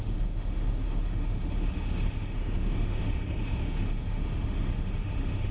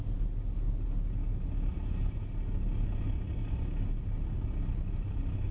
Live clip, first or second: second